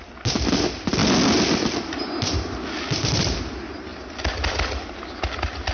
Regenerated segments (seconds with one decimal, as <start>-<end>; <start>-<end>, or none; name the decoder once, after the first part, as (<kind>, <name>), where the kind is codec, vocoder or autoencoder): none